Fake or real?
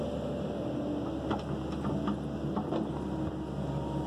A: real